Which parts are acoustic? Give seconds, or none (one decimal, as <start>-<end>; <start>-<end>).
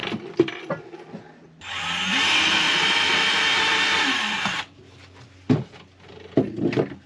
1.2-2.1; 5.0-7.1